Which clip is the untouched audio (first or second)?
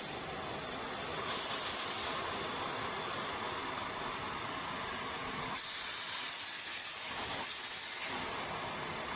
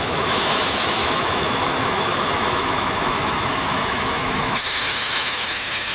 first